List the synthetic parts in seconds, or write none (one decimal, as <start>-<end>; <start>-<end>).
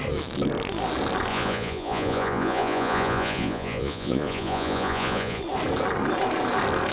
1.3-5.4